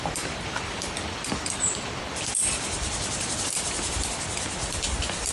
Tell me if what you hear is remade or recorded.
remade